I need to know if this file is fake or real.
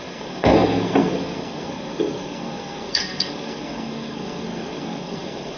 fake